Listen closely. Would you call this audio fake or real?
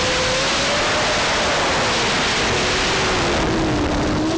real